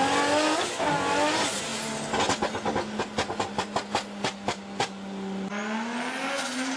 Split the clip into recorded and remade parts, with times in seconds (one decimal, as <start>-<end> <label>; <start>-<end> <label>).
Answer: 0.0-6.8 recorded